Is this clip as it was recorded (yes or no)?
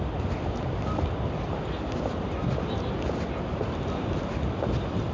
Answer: yes